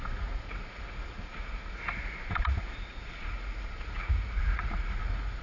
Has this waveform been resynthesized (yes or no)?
yes